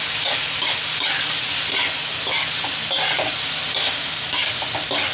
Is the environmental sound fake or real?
real